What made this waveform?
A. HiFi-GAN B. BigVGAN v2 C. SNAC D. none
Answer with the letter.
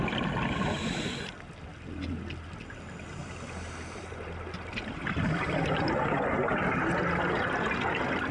D